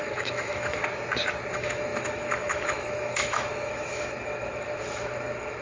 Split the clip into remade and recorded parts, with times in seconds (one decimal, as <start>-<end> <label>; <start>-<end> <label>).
0.0-0.8 remade; 0.8-1.5 recorded; 1.5-5.6 remade